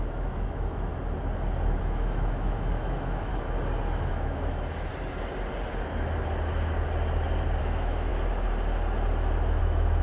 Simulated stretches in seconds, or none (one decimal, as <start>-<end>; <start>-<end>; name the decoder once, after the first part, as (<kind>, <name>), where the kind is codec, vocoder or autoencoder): 0.0-0.9 (autoencoder, DAC-VAE); 1.8-3.3; 4.1-4.9; 7.6-8.1; 9.6-10.0